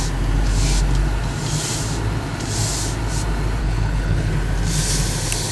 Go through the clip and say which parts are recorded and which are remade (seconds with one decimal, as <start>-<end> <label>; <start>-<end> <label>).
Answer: 0.0-3.6 recorded; 3.6-4.3 remade; 4.3-5.5 recorded